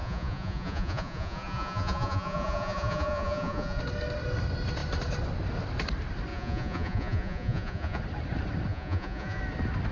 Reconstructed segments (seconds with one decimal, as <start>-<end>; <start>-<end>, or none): 0.0-3.8; 6.3-8.0; 8.7-9.4